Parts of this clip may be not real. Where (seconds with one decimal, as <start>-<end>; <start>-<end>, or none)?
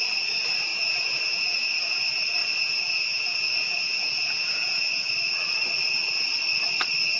0.7-2.0; 2.4-5.1